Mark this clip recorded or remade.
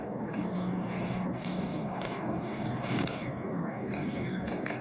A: remade